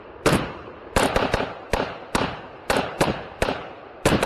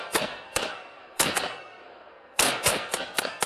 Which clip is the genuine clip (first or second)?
first